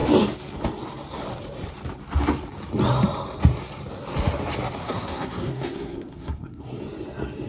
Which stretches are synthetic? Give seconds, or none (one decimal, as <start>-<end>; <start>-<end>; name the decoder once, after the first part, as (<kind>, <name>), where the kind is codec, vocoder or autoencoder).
4.8-6.8 (codec, SNAC)